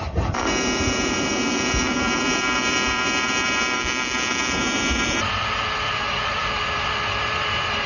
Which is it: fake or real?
fake